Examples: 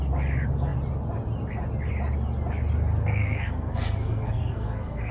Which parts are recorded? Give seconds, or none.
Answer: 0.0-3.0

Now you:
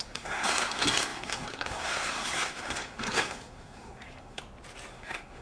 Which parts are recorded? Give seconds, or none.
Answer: 4.4-4.9

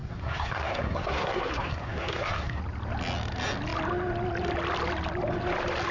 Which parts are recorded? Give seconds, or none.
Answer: 2.6-5.9

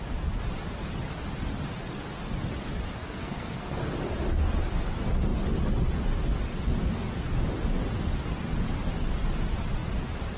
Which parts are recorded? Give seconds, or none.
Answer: 0.0-3.0; 3.8-10.4

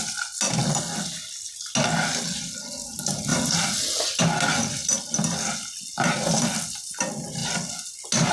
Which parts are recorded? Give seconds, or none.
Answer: 0.0-8.3

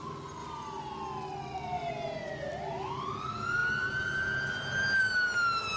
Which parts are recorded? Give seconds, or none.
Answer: 0.0-5.8